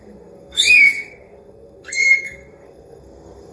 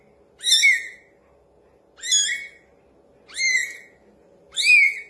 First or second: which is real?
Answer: second